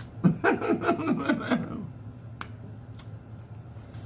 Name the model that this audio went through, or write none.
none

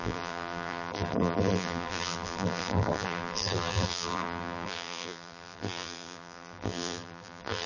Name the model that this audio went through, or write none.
vocoder, BigVGAN v2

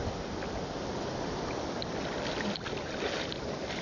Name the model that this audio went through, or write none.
none